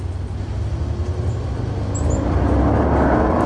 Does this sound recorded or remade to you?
recorded